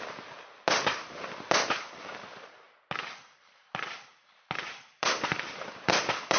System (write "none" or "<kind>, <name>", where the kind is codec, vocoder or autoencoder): none